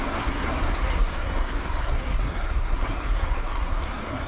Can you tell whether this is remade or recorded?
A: remade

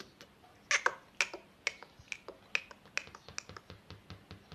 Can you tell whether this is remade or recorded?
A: recorded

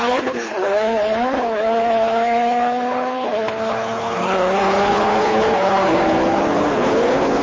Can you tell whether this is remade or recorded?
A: remade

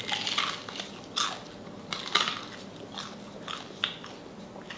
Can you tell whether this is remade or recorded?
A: recorded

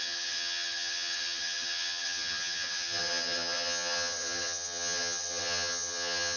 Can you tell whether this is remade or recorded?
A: remade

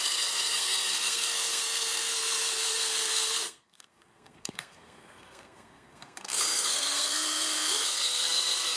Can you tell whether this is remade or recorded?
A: remade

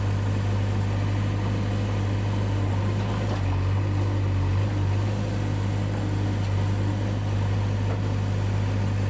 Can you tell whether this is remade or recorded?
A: recorded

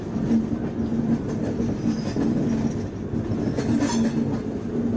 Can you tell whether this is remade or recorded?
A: recorded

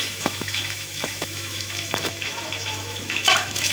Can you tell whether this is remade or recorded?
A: remade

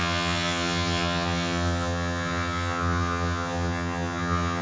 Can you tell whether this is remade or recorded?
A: remade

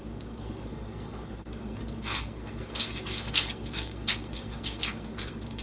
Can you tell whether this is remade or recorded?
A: remade